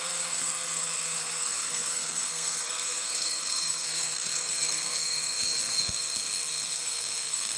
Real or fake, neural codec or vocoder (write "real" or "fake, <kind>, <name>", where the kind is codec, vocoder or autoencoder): fake, codec, SNAC